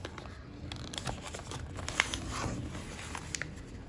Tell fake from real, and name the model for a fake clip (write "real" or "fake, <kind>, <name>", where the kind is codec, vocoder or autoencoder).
real